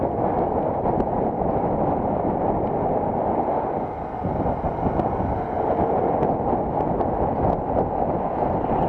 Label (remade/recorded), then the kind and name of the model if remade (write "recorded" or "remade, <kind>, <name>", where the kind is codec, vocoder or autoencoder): recorded